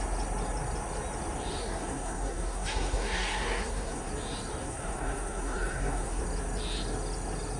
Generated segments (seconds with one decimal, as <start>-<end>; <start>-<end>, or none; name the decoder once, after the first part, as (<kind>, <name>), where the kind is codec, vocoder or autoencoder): 1.6-4.1 (codec, SNAC); 4.6-6.2